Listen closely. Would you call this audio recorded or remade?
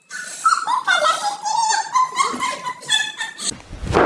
recorded